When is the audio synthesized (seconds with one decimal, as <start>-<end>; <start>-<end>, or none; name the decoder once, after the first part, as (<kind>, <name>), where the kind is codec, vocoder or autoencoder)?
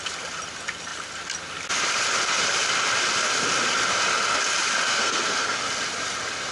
4.9-5.6 (codec, SNAC)